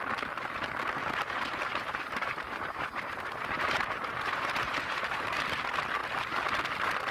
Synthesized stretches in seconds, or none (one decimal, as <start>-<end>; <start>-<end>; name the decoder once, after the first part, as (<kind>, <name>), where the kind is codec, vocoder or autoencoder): 1.0-5.3 (vocoder, BigVGAN v2)